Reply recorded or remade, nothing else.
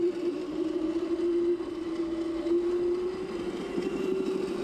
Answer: recorded